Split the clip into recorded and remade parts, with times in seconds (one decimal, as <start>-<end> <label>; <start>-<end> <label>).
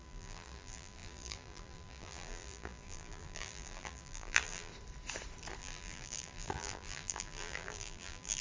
0.0-4.7 remade; 4.7-5.6 recorded; 5.6-8.4 remade